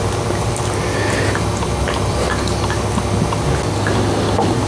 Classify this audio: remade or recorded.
recorded